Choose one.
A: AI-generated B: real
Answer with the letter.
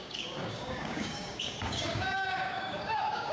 A